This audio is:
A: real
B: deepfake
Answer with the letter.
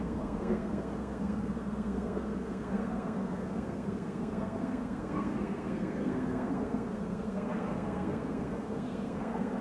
B